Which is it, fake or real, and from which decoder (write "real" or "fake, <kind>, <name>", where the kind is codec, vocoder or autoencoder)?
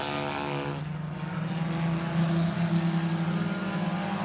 real